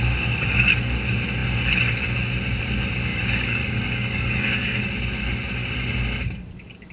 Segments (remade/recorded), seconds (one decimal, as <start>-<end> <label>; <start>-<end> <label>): 0.0-3.1 recorded; 3.1-4.8 remade; 4.8-6.9 recorded